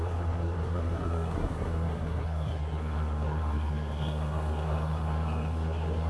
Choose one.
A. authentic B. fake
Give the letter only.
B